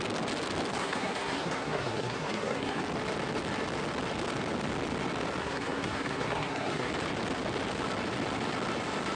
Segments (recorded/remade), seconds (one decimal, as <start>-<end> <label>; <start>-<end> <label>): 0.0-0.8 recorded; 0.8-2.8 remade; 2.8-5.4 recorded; 5.4-6.9 remade; 6.9-9.2 recorded